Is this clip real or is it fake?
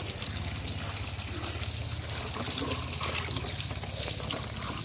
real